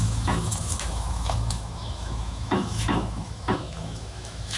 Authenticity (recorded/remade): remade